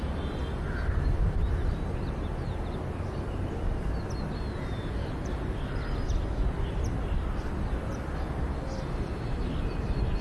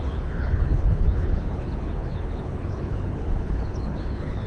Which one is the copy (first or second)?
second